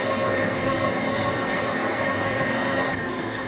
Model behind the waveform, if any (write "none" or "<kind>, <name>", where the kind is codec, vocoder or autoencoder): codec, SNAC